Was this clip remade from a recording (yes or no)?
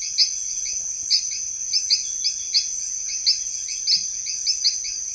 no